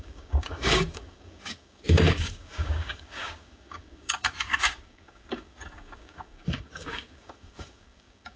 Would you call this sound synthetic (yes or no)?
yes